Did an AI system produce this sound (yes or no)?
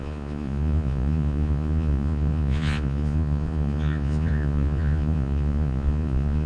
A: yes